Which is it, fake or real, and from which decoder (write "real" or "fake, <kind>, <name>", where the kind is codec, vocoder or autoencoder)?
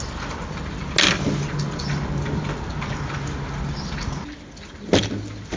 real